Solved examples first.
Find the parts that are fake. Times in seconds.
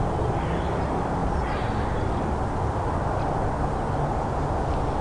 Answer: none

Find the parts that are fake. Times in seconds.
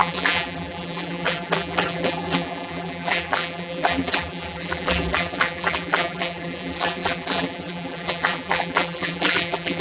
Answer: 0.0-9.8 (vocoder, BigVGAN v2)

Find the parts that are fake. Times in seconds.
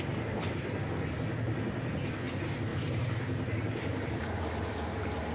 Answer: 2.7-4.4 (vocoder, BigVGAN v2)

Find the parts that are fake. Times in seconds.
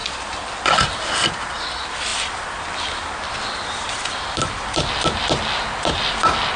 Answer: none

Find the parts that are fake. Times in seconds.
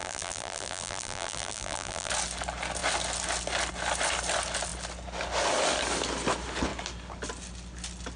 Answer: 0.0-2.1 (vocoder, BigVGAN v2)